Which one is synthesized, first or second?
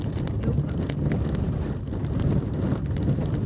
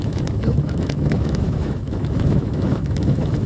second